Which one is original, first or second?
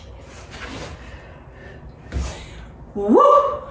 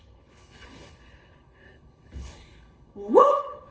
first